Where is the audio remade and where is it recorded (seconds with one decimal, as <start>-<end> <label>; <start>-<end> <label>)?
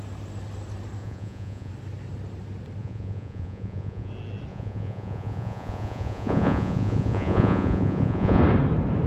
0.0-1.0 recorded; 1.0-1.7 remade; 1.7-2.8 recorded; 2.8-4.1 remade; 4.1-4.5 recorded; 4.5-8.4 remade; 8.4-9.1 recorded